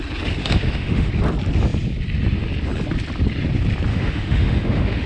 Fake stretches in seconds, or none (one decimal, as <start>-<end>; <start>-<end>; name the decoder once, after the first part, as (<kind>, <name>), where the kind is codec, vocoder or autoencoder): 0.4-1.1 (autoencoder, DAC-VAE); 3.9-5.1